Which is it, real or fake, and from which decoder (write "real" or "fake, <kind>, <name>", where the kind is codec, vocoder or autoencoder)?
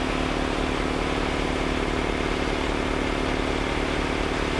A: real